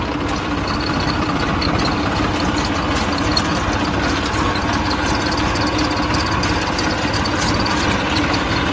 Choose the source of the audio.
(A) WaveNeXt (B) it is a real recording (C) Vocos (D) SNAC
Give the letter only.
B